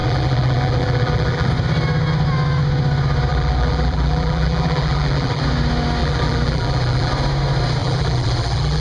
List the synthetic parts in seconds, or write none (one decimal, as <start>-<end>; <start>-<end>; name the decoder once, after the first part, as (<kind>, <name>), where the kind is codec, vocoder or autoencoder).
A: 0.0-1.5 (vocoder, BigVGAN v2); 3.3-5.4; 6.0-7.1; 7.8-8.8